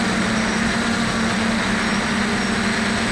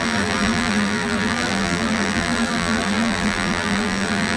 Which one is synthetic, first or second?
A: second